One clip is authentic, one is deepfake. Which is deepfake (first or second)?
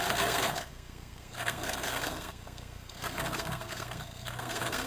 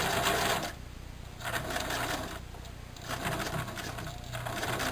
first